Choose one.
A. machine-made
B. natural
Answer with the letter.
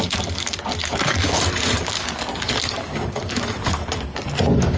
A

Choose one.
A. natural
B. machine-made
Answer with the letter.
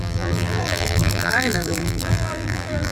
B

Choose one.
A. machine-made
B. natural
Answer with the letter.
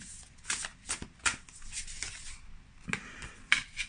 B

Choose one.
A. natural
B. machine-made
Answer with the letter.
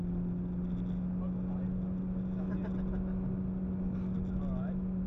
A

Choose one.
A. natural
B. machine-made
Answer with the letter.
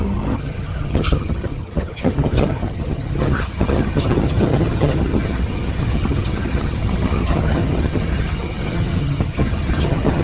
B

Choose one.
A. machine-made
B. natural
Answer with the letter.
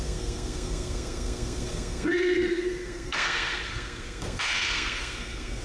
A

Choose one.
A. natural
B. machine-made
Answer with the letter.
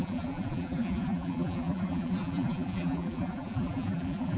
B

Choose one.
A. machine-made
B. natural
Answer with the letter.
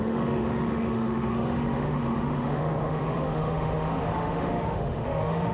A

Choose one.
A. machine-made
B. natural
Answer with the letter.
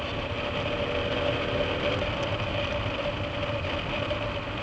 B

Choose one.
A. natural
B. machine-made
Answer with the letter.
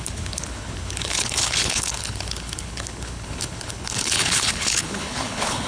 B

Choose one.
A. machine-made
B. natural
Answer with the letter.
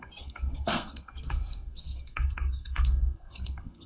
A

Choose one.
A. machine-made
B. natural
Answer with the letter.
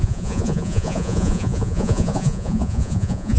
A